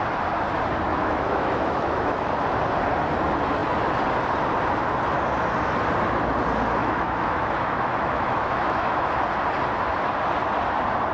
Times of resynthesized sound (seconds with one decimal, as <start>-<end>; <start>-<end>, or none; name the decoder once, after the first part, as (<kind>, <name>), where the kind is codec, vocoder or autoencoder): 0.9-2.3 (autoencoder, DAC-VAE); 6.8-9.2